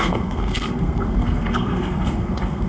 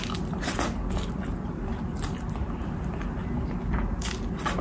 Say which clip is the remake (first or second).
first